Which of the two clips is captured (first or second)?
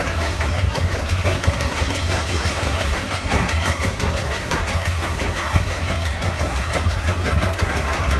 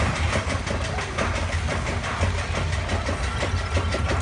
second